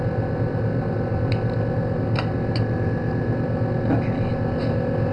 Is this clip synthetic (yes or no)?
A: no